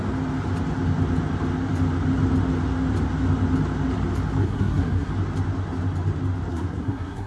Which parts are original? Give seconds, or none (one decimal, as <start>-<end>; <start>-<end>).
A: 0.0-4.4; 5.1-6.5